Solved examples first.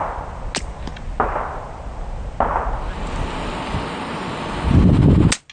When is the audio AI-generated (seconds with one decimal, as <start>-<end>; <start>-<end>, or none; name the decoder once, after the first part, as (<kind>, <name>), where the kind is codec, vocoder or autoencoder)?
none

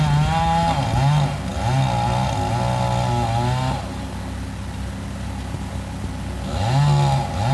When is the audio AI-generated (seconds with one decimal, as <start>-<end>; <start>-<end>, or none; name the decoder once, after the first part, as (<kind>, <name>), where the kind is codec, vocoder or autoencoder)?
none

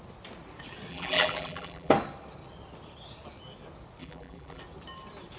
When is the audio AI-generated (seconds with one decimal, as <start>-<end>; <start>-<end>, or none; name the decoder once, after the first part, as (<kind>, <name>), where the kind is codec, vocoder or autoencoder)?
0.9-1.9 (vocoder, BigVGAN v2); 4.0-4.6

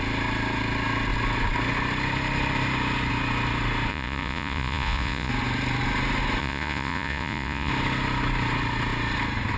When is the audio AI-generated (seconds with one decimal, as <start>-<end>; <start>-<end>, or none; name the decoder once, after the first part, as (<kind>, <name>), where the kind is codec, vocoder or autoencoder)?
3.9-5.3 (vocoder, Vocos); 6.4-7.7

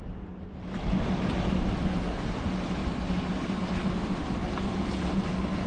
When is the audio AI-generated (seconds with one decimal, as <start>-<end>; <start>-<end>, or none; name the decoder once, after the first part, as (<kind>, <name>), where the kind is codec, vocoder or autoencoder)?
none